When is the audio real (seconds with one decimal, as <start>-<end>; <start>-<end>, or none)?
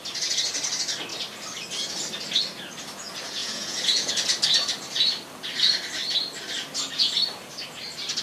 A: 0.0-3.4; 4.1-8.2